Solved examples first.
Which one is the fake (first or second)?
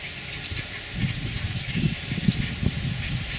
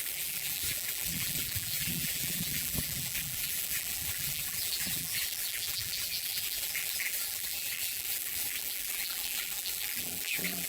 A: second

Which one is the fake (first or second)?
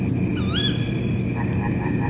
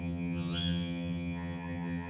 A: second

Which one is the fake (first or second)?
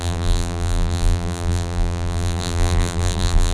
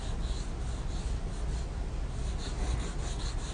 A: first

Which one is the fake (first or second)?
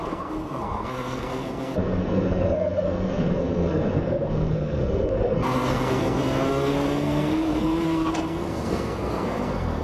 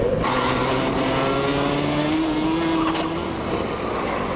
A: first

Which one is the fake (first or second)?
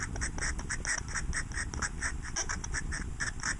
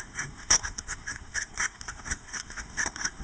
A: second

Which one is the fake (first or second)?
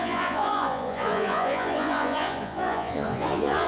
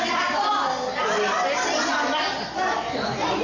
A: first